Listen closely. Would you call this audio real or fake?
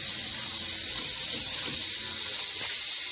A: real